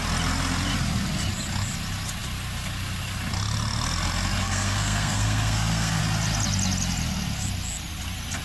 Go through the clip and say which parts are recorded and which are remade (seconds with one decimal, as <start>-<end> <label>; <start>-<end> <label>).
0.0-4.4 recorded; 4.4-6.0 remade; 6.0-8.4 recorded